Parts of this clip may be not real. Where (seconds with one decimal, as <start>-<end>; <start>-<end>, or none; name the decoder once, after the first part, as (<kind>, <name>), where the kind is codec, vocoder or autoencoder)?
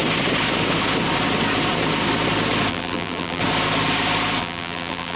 2.7-3.4 (vocoder, BigVGAN v2); 4.4-5.2